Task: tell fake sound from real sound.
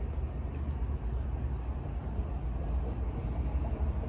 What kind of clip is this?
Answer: real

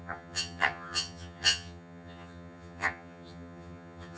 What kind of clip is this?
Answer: fake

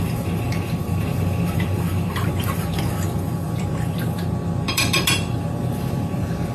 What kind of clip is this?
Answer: fake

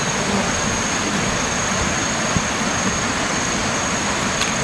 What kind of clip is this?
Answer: real